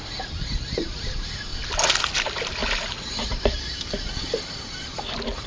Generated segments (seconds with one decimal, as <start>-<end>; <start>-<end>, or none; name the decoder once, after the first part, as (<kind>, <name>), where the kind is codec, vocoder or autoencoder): none